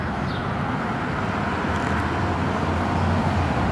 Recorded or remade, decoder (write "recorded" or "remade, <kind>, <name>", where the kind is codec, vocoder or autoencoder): recorded